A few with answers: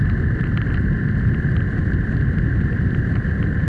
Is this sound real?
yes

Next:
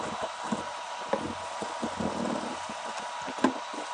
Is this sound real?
yes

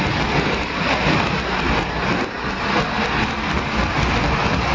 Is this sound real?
yes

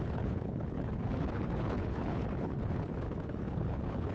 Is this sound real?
no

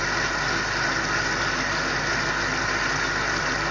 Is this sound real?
yes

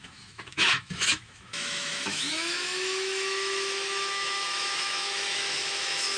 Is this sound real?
no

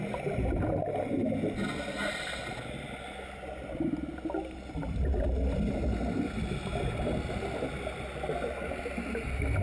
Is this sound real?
yes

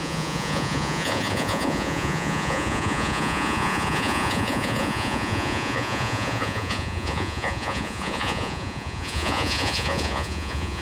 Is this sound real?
no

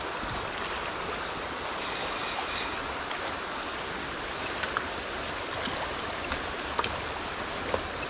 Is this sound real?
yes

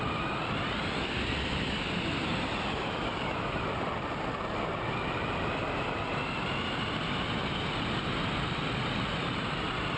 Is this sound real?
yes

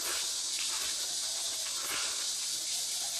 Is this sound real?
yes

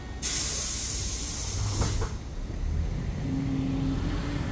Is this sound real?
yes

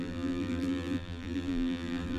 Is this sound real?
no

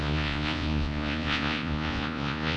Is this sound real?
no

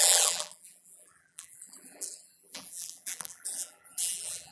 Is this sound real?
no